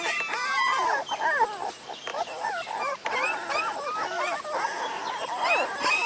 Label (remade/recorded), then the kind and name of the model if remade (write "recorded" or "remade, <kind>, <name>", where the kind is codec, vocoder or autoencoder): remade, vocoder, BigVGAN v2